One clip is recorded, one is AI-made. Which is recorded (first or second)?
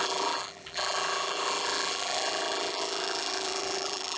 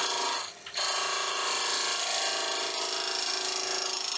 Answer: second